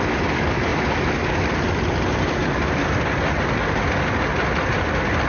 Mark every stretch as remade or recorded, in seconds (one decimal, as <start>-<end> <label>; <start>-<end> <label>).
0.0-5.3 recorded

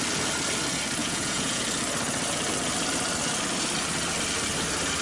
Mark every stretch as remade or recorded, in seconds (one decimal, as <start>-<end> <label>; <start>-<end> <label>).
0.0-1.0 recorded; 1.0-1.6 remade; 1.6-5.0 recorded

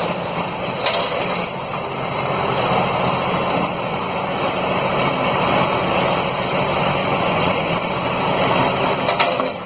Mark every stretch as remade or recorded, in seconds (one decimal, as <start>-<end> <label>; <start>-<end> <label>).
0.0-3.9 recorded; 3.9-4.5 remade; 4.5-7.0 recorded; 7.0-7.7 remade; 7.7-9.7 recorded

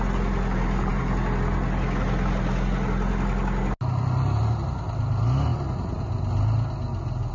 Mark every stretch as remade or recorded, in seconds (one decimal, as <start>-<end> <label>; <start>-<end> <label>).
0.0-7.3 recorded